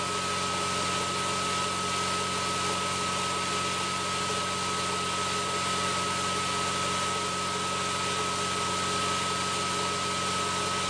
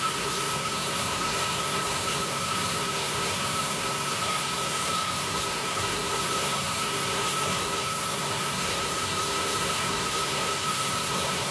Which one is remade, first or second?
second